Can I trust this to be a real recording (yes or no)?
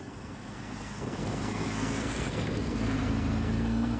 no